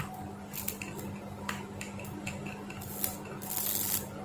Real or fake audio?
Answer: real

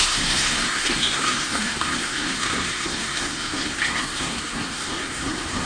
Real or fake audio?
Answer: fake